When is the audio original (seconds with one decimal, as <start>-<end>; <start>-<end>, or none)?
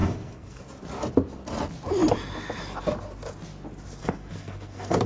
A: 0.6-4.0